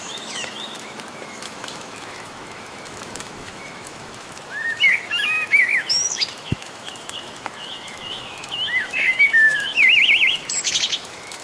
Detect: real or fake fake